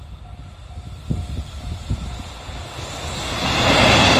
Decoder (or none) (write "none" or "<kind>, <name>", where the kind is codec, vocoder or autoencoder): none